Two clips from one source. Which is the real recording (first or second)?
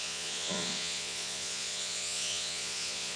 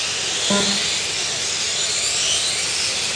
second